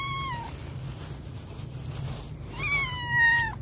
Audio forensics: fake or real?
real